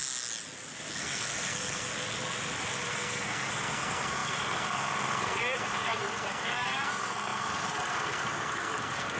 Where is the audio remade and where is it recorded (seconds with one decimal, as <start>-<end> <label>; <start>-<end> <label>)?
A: 0.0-1.0 recorded; 1.0-1.9 remade; 1.9-2.9 recorded; 2.9-9.2 remade